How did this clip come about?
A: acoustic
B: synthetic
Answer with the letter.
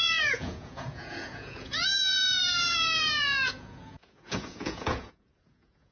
B